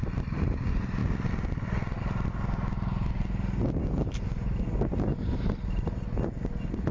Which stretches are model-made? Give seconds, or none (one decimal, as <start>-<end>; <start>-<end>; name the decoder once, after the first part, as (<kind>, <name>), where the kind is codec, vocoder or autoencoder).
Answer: none